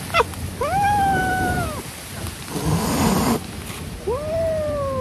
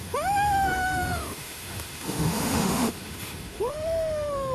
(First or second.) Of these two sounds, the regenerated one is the second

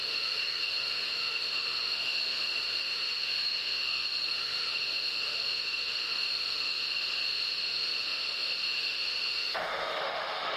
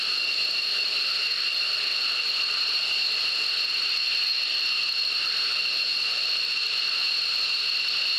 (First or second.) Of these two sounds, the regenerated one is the first